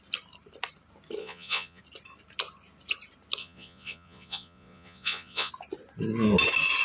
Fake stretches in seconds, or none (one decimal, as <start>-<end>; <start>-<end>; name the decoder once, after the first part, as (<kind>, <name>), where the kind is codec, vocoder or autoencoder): 1.2-1.8 (vocoder, Vocos); 3.4-5.5